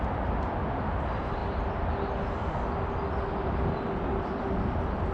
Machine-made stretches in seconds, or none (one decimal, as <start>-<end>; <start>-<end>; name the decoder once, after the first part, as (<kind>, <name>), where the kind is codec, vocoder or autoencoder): none